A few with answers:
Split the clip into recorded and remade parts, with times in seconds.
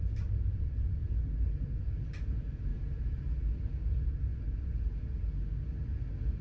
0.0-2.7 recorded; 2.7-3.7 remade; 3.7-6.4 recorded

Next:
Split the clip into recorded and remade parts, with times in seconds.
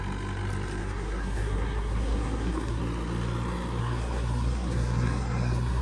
0.0-0.8 recorded; 0.8-2.8 remade; 2.8-3.8 recorded; 3.8-5.8 remade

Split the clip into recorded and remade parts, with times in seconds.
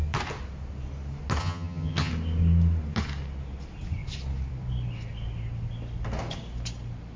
0.0-1.4 recorded; 1.4-2.1 remade; 2.1-7.2 recorded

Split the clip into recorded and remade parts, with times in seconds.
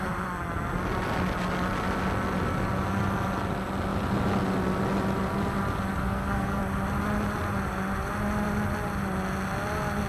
0.0-6.0 recorded; 6.0-6.6 remade; 6.6-10.1 recorded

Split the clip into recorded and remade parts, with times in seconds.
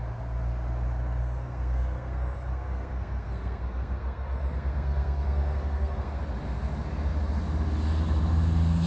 0.0-1.2 recorded; 1.2-6.2 remade; 6.2-8.9 recorded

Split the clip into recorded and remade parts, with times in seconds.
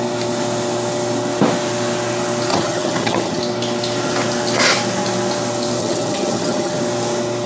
0.0-2.5 recorded; 2.5-3.4 remade; 3.4-5.8 recorded; 5.8-6.8 remade; 6.8-7.5 recorded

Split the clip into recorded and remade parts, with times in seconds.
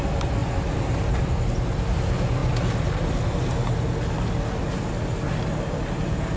0.0-6.4 recorded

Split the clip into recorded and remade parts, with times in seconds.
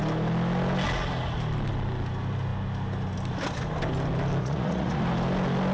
0.0-4.4 recorded; 4.4-5.0 remade; 5.0-5.7 recorded